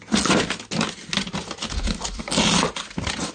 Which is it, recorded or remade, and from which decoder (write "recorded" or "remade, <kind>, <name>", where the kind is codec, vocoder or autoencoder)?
recorded